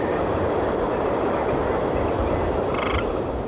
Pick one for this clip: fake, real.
fake